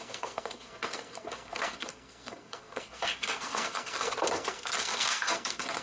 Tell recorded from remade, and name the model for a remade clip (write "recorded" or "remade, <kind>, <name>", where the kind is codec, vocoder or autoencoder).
remade, codec, SNAC